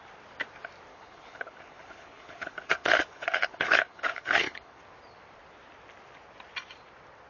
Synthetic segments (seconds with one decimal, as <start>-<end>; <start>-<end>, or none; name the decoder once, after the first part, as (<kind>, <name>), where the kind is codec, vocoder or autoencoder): 0.9-4.8 (codec, HILCodec)